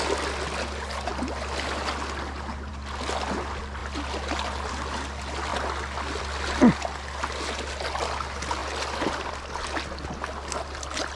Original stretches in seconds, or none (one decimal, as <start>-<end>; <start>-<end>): 0.0-11.2